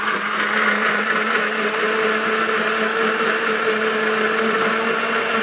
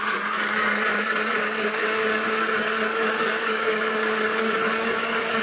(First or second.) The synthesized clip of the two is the second